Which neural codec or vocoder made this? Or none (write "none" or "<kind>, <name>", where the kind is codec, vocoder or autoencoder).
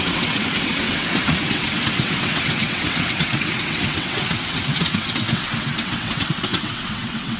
vocoder, WaveNeXt